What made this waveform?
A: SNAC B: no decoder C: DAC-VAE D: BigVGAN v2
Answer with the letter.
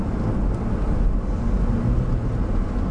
B